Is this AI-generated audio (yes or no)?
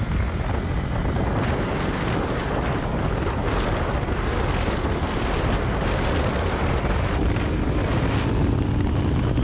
no